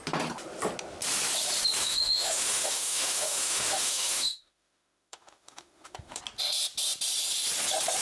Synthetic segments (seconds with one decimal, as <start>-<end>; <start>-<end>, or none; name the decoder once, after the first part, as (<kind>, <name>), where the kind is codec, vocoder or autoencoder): 1.8-6.2 (autoencoder, DAC-VAE)